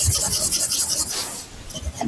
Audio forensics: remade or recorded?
remade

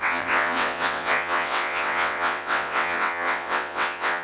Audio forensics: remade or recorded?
remade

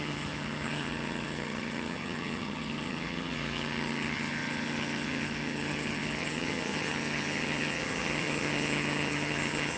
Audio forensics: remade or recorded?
remade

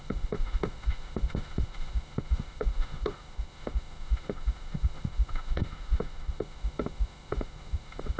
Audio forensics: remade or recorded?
remade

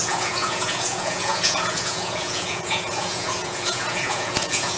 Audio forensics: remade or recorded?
remade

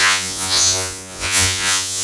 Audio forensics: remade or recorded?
remade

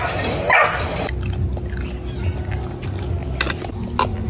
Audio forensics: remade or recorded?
recorded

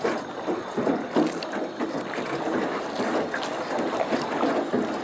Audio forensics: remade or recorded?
recorded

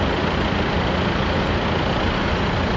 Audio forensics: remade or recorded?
recorded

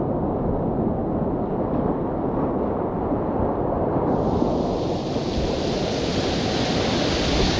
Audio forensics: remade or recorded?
recorded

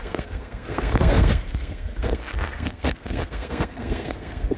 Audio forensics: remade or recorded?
remade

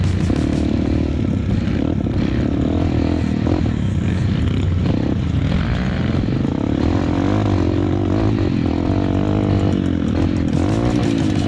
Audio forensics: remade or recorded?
recorded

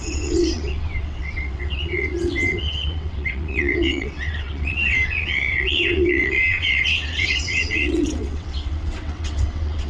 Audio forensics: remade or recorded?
remade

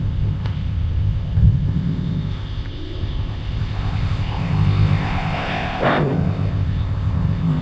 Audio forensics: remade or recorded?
remade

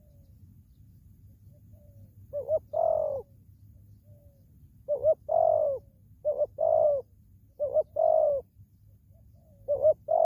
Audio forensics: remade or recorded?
recorded